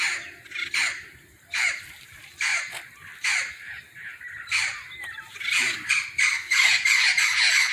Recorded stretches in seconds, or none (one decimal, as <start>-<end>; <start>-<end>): 0.0-7.7